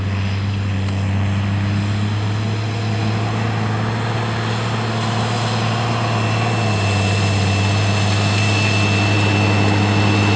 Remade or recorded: recorded